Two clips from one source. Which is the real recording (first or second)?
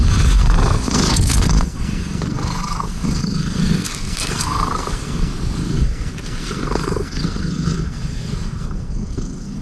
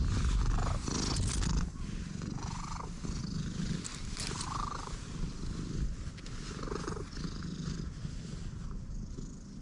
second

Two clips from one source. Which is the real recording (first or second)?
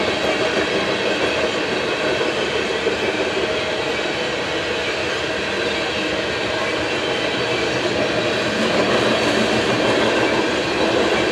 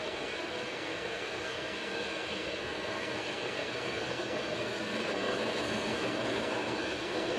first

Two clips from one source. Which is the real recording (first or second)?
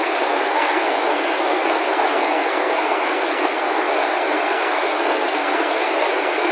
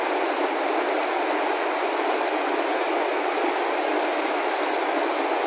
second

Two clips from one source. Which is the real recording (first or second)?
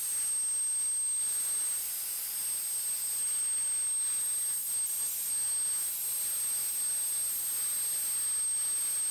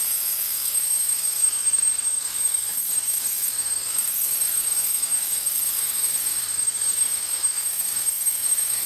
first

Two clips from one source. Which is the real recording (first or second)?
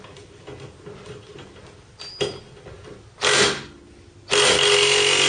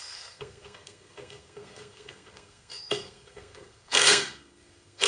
first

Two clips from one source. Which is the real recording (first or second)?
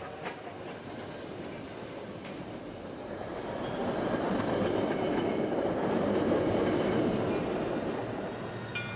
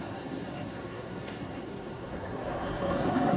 first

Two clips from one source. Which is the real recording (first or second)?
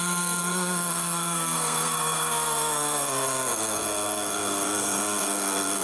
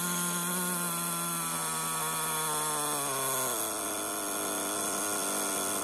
second